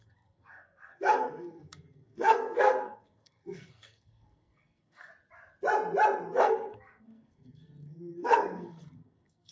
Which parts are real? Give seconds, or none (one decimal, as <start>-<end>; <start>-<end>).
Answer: 5.1-6.3